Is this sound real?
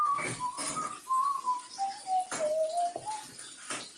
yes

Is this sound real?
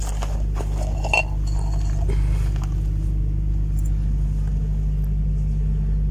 yes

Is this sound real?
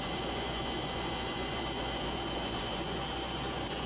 no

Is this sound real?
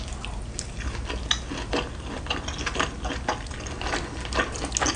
yes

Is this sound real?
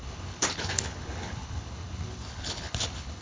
no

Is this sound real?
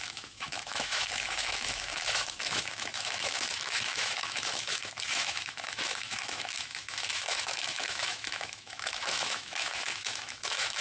no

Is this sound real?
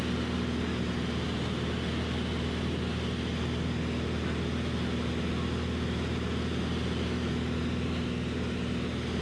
yes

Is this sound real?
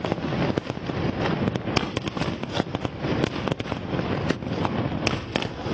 yes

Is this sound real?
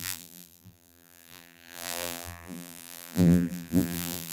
no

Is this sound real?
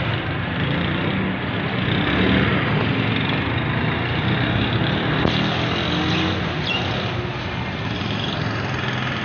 yes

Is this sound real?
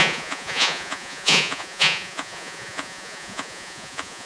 no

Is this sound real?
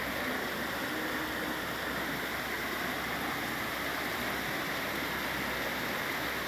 yes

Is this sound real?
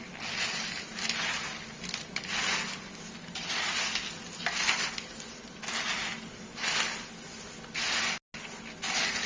yes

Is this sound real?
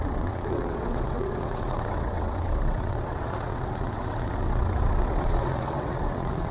no